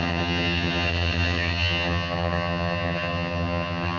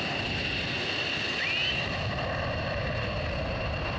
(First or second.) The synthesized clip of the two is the first